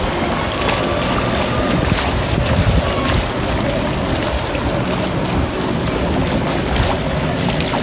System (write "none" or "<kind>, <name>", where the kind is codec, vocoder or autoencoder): none